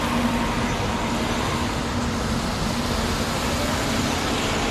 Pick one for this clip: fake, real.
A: real